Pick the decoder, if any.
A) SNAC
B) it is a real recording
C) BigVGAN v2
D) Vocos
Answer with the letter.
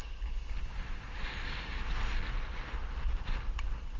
B